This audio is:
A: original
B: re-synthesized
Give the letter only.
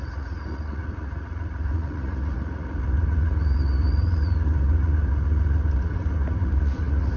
B